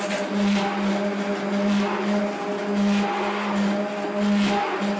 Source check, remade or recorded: recorded